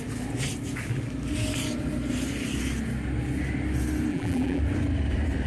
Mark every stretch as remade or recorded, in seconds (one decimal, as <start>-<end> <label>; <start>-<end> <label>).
0.0-4.1 recorded; 4.1-4.6 remade; 4.6-5.5 recorded